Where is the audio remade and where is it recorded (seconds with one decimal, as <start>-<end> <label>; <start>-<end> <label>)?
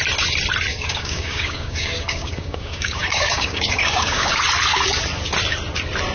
0.0-0.7 recorded; 0.7-4.4 remade; 4.4-6.1 recorded